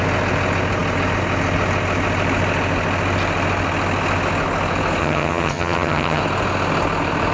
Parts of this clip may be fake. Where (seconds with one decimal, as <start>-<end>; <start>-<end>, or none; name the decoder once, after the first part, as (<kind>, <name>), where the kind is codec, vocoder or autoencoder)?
5.0-6.2 (vocoder, HiFi-GAN)